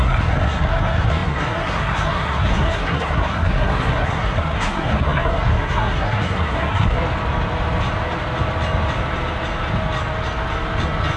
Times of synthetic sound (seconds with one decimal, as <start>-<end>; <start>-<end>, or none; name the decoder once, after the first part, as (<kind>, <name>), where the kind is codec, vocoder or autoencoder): 0.0-7.0 (codec, SNAC)